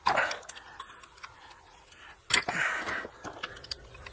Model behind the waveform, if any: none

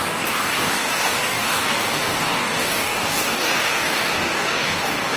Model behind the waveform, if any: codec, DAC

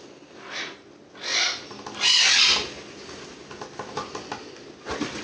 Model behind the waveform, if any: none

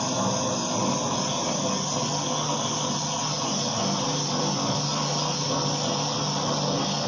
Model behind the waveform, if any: none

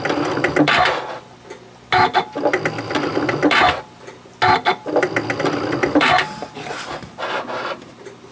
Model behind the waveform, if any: none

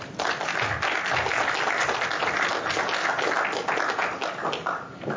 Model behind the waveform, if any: none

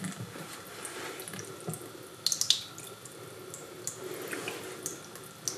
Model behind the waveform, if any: none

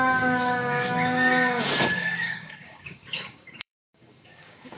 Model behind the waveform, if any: codec, DAC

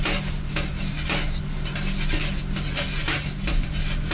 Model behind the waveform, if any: none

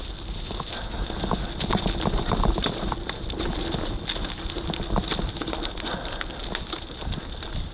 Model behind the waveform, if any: none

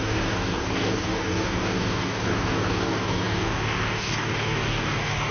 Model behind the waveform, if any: codec, DAC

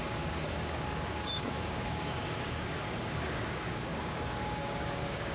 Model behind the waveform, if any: codec, DAC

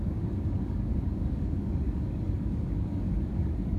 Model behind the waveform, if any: codec, DAC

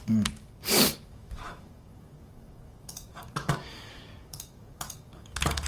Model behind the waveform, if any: codec, DAC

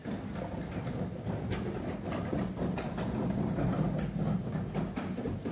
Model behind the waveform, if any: none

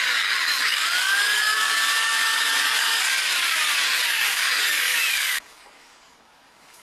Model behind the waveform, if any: codec, DAC